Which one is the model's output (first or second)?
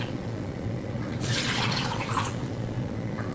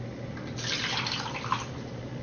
first